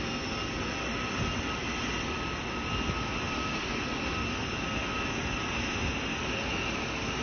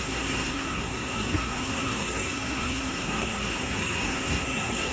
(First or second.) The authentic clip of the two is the first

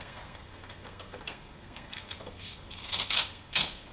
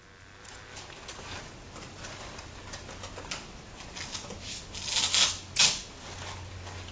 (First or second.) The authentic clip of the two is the second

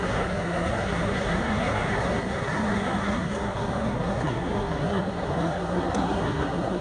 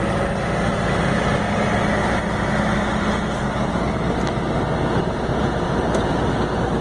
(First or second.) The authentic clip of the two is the second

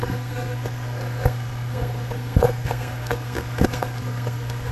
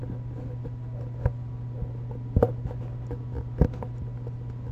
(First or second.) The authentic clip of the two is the second